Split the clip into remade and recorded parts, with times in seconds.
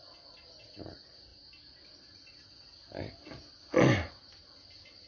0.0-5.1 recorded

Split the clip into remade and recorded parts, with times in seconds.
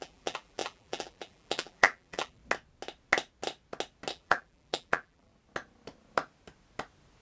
0.0-2.4 remade; 2.4-4.1 recorded; 4.1-5.3 remade; 5.3-7.2 recorded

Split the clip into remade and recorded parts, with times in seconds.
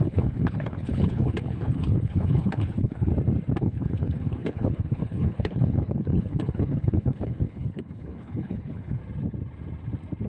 0.0-3.1 remade; 3.1-3.6 recorded; 3.6-9.0 remade; 9.0-10.3 recorded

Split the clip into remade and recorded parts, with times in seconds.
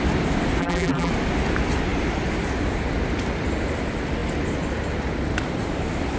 0.0-0.6 recorded; 0.6-1.1 remade; 1.1-6.2 recorded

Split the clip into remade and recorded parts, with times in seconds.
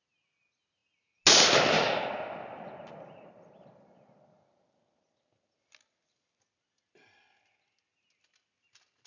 0.0-9.1 recorded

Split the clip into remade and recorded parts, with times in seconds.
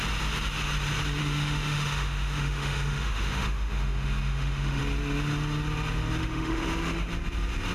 0.0-1.2 recorded; 1.2-4.8 remade; 4.8-6.2 recorded; 6.2-7.1 remade; 7.1-7.7 recorded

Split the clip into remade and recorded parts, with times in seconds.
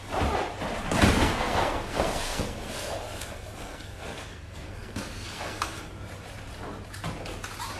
0.0-1.2 recorded; 1.2-5.9 remade; 5.9-7.8 recorded